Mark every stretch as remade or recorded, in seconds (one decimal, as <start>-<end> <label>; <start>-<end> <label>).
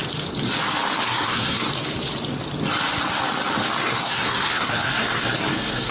0.0-1.0 recorded; 1.0-1.7 remade; 1.7-3.8 recorded; 3.8-5.9 remade